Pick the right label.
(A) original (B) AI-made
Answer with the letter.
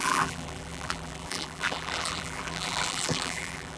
B